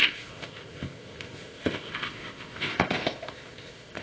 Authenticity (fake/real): fake